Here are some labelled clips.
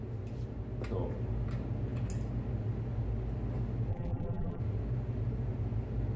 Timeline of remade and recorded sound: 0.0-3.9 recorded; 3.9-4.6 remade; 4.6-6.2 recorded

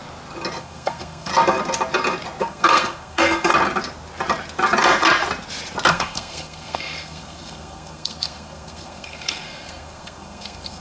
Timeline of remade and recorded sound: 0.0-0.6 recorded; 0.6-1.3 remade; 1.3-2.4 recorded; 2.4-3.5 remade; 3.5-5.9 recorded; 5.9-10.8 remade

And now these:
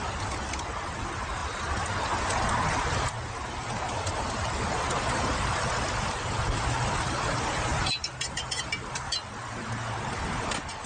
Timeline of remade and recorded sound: 0.0-10.9 recorded

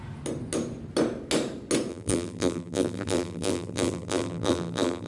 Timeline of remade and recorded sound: 0.0-1.9 recorded; 1.9-5.1 remade

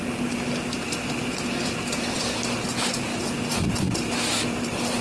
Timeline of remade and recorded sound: 0.0-5.0 recorded